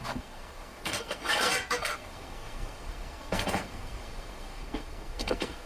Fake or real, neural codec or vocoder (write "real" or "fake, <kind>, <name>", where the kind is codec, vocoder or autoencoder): fake, codec, SNAC